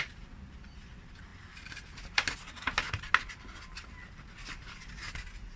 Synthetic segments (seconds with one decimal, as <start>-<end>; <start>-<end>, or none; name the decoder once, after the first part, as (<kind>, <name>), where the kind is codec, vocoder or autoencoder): none